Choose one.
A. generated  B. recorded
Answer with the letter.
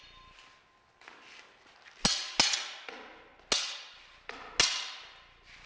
B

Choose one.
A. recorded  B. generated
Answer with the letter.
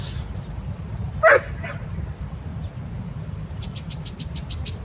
A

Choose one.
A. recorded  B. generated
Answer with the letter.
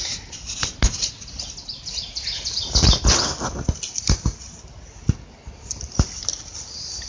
A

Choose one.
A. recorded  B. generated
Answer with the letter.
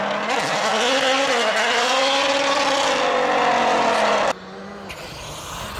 A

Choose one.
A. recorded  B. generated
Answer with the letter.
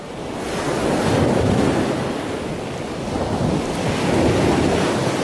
A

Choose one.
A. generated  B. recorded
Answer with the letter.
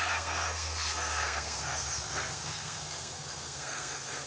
A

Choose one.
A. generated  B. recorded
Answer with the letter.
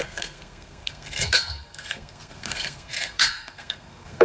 A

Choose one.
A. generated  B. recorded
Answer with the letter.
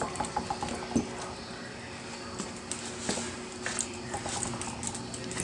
B